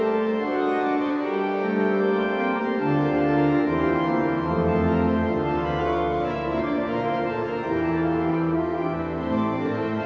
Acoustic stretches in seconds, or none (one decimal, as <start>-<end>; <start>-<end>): 0.0-1.1; 2.6-5.8; 6.6-8.3